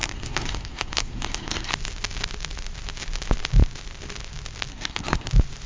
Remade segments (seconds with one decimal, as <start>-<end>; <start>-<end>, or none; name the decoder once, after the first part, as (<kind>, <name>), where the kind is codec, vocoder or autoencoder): 0.0-1.7 (codec, SNAC); 4.7-5.3